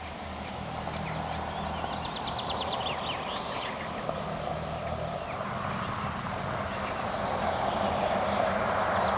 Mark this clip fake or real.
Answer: real